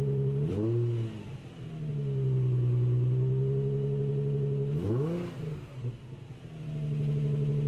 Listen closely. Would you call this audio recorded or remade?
recorded